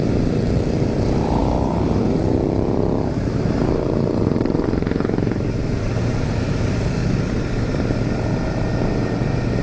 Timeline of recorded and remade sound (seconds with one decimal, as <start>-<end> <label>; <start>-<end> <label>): 0.0-7.0 remade; 7.0-8.3 recorded; 8.3-9.6 remade